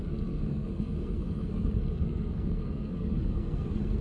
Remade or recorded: remade